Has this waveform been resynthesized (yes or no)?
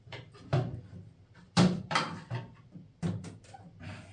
yes